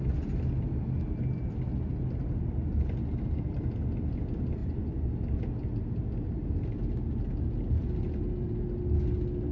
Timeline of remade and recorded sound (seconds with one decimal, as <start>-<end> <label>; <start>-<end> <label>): 0.0-4.6 recorded; 4.6-5.1 remade; 5.1-9.5 recorded